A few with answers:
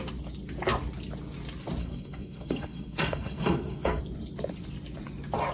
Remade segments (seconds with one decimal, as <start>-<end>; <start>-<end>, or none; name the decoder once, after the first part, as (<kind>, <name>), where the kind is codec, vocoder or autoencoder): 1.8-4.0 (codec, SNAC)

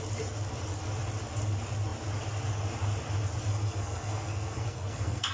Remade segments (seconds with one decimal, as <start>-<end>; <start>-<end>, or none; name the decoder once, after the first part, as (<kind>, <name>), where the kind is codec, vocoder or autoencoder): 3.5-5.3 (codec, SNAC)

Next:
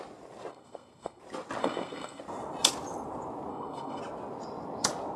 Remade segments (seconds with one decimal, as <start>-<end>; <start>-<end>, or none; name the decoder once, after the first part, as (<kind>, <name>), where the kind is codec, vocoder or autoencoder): 0.5-1.2 (codec, SNAC); 1.6-2.2; 3.5-4.0